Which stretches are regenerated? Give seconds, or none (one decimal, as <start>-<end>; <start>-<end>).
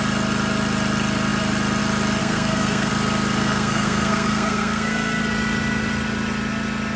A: 2.2-2.9; 3.4-5.2